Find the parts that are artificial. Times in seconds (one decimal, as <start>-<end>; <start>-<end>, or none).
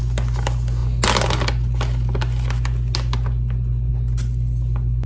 none